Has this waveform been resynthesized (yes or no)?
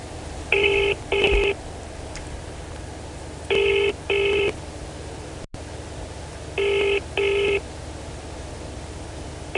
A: yes